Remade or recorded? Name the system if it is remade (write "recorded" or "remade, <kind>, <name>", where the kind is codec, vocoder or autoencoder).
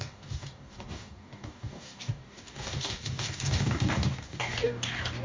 remade, codec, DAC